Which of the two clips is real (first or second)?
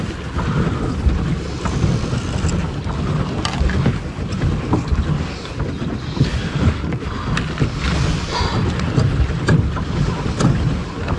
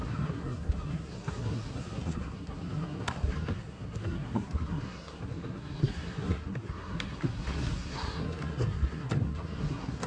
first